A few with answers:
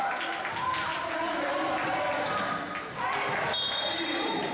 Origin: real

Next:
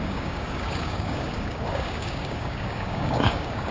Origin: fake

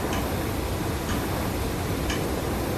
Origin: real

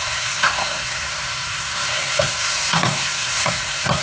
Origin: fake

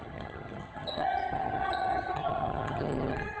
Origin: fake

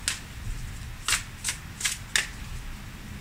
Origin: real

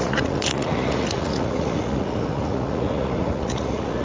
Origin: fake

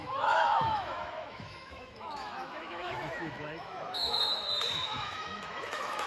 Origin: fake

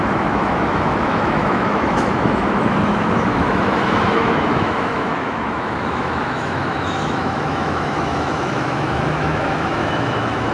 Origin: fake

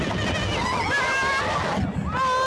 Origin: real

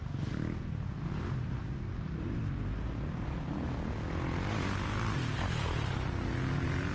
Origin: real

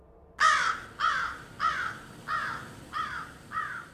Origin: real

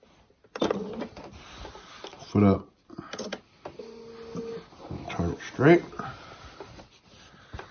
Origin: real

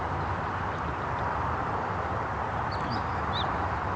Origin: real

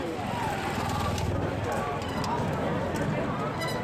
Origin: real